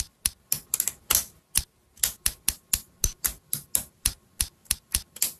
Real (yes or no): yes